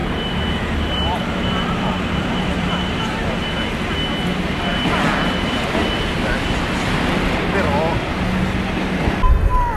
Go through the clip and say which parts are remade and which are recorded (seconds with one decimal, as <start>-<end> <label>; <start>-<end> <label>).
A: 0.0-3.4 remade; 3.4-9.8 recorded